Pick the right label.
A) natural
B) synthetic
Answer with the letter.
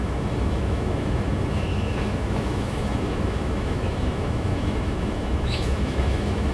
B